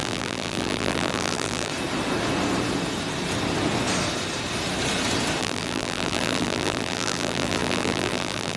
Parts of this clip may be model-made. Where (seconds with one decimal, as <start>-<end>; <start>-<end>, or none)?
0.0-1.7; 5.4-8.6